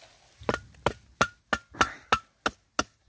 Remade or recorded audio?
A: recorded